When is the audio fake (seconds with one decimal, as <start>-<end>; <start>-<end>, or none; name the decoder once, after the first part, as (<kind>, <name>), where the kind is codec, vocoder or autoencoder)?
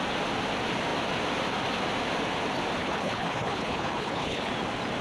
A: 2.8-4.5 (codec, HILCodec)